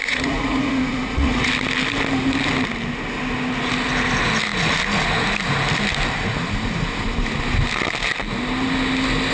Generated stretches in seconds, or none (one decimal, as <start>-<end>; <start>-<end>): 0.0-1.5